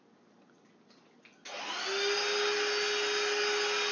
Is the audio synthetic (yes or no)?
no